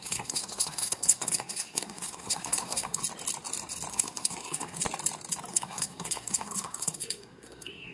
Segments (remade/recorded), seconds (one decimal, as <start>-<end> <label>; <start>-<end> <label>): 0.0-3.0 remade; 3.0-3.9 recorded; 3.9-4.8 remade; 4.8-5.5 recorded; 5.5-7.9 remade